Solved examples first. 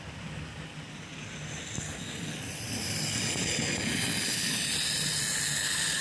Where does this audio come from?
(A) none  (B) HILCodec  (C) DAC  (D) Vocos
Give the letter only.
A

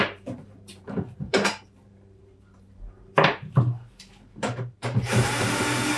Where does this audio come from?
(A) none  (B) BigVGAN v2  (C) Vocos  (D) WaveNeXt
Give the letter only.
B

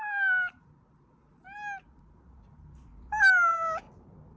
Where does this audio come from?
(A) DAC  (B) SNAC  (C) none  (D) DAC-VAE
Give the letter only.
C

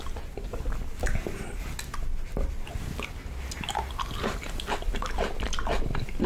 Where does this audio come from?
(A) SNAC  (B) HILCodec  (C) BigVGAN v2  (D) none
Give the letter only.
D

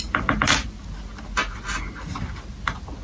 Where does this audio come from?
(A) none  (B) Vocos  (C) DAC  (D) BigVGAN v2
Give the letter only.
A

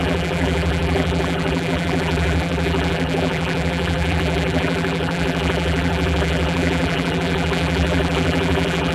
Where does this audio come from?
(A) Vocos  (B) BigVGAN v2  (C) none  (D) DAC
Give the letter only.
B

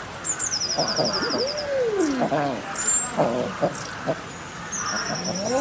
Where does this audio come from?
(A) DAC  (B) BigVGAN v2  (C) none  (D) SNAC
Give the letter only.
C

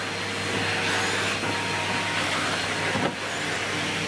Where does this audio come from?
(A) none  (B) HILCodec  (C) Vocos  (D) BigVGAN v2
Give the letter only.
A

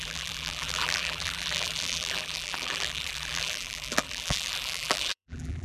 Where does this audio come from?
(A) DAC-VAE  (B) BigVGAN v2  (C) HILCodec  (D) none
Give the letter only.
B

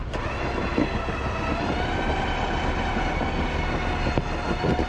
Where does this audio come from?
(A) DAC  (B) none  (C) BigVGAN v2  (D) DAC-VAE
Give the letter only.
B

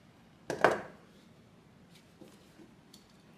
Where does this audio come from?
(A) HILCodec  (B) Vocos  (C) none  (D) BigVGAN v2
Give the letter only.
C